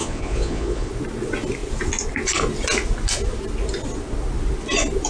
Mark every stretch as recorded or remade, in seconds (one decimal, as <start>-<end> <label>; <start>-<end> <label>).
0.0-0.9 remade; 0.9-5.1 recorded